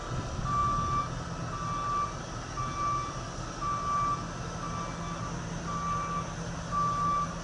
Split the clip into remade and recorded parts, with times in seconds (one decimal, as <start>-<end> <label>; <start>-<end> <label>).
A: 0.0-7.4 recorded